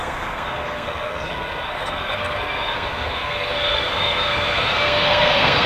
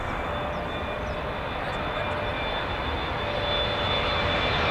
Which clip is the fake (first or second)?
first